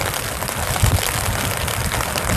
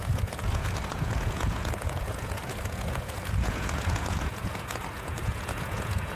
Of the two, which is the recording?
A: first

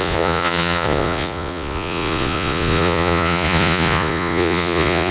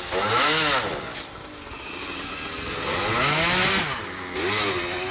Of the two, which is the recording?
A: second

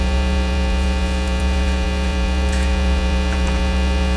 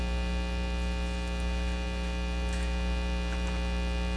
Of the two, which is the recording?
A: second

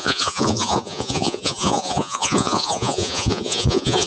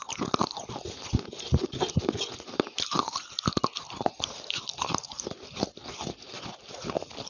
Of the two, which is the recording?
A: second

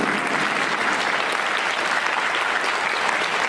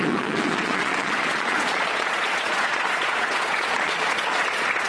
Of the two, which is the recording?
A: first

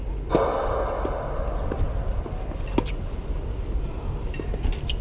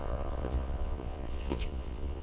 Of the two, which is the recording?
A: first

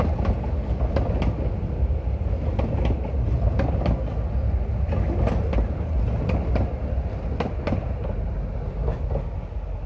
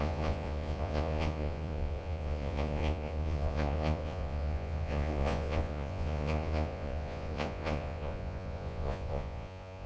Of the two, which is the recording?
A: first